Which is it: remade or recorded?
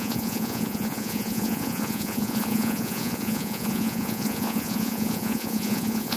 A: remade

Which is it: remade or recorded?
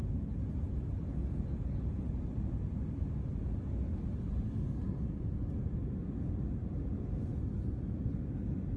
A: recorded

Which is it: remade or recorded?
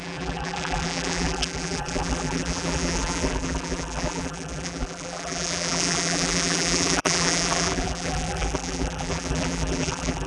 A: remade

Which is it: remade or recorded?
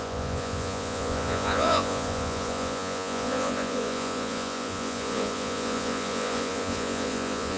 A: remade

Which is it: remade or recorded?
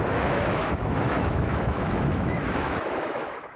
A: remade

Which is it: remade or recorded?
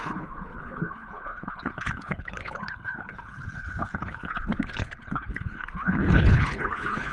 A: remade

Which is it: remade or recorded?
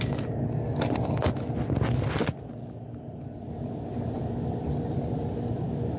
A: remade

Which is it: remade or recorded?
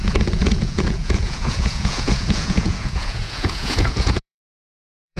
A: remade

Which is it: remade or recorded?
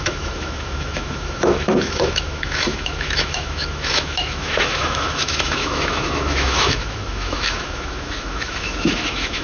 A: remade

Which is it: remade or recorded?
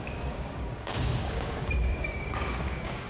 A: remade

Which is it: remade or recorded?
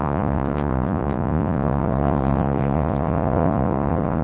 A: remade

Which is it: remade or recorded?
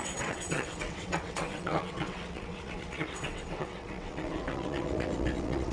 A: remade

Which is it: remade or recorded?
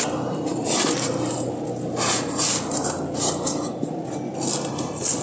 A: recorded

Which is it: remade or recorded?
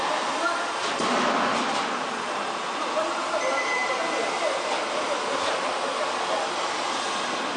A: recorded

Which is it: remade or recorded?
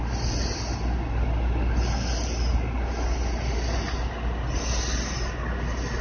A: recorded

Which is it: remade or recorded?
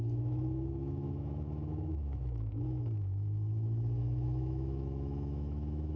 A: remade